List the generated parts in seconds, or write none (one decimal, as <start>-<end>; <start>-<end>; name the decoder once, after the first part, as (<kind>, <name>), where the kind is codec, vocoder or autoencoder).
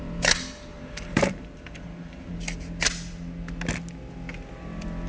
0.7-2.3 (vocoder, BigVGAN v2)